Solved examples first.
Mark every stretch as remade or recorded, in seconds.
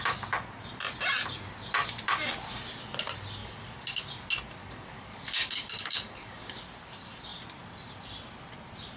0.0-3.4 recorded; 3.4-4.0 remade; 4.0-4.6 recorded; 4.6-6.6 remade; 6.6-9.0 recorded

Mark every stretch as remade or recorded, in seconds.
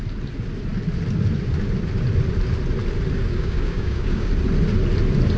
0.0-3.2 recorded; 3.2-4.3 remade; 4.3-5.4 recorded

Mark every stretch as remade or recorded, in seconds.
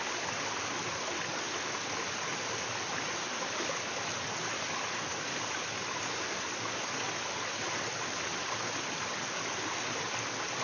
0.0-10.6 recorded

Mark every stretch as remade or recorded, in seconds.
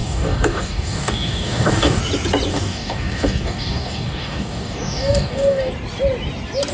0.0-2.0 remade; 2.0-2.5 recorded; 2.5-5.7 remade; 5.7-6.7 recorded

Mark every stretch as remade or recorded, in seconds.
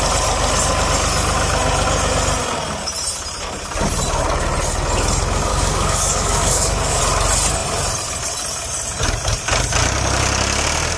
0.0-5.5 recorded; 5.5-7.0 remade; 7.0-11.0 recorded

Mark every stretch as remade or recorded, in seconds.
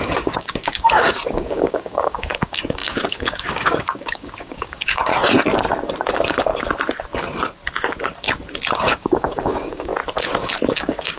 0.0-5.1 remade; 5.1-6.1 recorded; 6.1-6.5 remade; 6.5-8.8 recorded; 8.8-9.9 remade; 9.9-10.7 recorded; 10.7-11.2 remade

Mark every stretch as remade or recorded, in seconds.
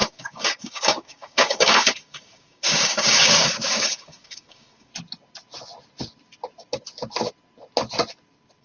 0.0-4.9 remade; 4.9-8.6 recorded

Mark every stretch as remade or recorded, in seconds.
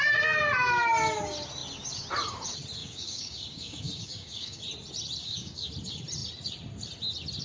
0.0-2.8 recorded; 2.8-4.6 remade; 4.6-5.2 recorded; 5.2-5.7 remade; 5.7-7.4 recorded